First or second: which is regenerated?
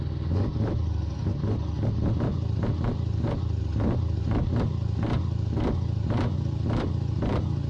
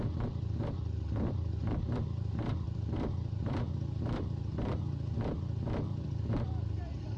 second